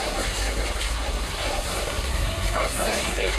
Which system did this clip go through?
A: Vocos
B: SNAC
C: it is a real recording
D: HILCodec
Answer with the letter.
B